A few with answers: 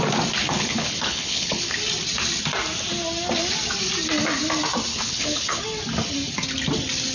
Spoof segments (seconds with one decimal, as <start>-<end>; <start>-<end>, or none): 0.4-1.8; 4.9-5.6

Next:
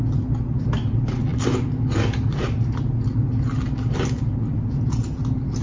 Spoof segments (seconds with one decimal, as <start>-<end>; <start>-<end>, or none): none

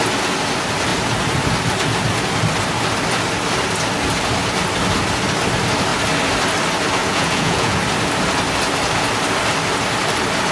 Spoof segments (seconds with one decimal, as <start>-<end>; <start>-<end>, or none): 7.0-7.8